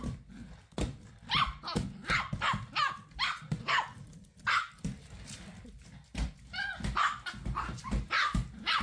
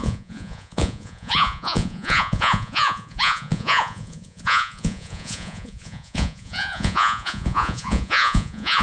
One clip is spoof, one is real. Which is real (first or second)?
first